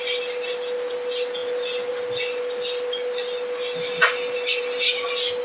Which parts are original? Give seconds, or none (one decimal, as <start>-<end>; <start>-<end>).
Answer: 0.0-5.4